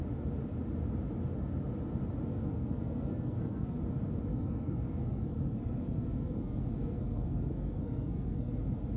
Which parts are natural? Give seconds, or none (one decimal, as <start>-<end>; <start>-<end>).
0.0-2.3; 3.8-4.3; 8.6-9.0